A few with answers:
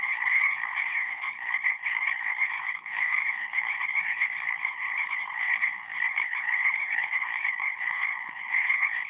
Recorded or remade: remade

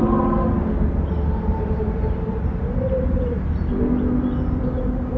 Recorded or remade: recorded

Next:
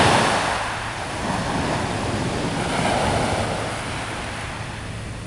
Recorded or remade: recorded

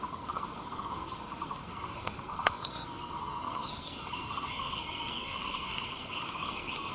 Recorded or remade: remade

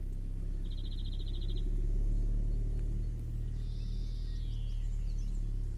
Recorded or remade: recorded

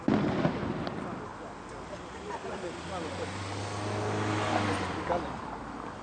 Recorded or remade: recorded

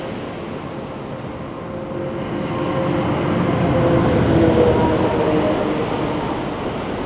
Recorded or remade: recorded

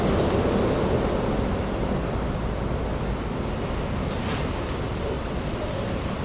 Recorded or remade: recorded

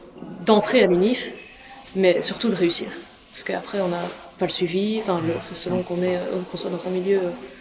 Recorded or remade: recorded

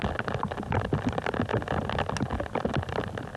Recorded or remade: recorded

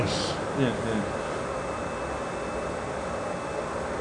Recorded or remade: recorded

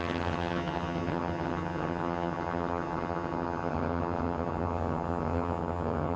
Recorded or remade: remade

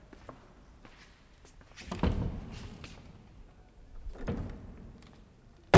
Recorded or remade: recorded